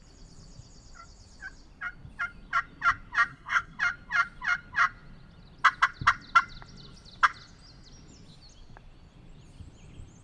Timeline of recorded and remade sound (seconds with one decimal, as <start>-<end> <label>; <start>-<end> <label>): 0.0-3.3 recorded; 3.3-3.8 remade; 3.8-10.2 recorded